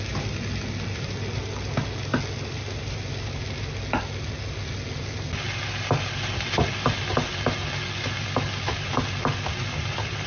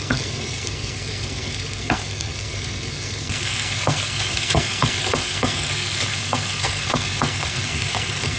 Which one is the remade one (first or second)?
second